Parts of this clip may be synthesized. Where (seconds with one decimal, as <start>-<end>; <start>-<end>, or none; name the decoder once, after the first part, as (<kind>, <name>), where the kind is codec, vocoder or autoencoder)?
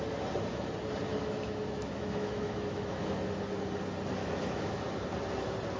1.1-3.4 (autoencoder, DAC-VAE); 4.2-4.8